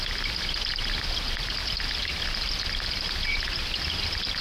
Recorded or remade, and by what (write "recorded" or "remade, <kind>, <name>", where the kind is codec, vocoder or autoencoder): recorded